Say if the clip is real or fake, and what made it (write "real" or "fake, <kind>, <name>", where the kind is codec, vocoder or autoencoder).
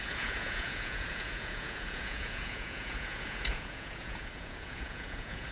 fake, vocoder, Vocos